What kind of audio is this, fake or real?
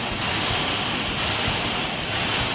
real